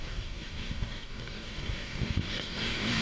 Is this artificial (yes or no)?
yes